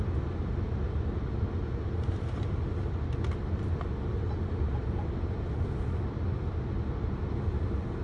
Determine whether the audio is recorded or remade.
recorded